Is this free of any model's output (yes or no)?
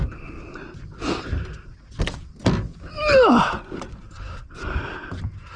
yes